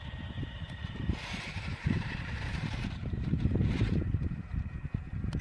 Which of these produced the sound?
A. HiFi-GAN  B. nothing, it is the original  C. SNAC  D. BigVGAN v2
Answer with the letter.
D